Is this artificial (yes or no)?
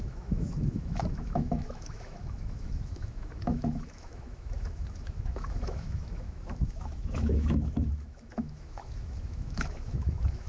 yes